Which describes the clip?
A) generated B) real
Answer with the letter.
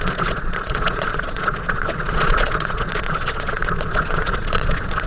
A